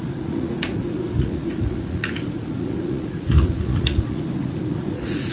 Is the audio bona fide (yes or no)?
no